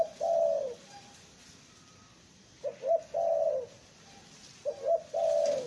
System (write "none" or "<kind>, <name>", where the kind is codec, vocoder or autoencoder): none